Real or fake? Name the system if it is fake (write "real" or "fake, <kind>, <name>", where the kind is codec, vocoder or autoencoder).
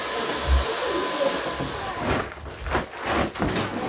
real